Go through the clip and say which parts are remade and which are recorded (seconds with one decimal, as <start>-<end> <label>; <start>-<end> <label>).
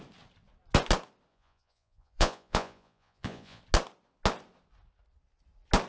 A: 0.0-1.3 recorded; 1.3-3.6 remade; 3.6-5.9 recorded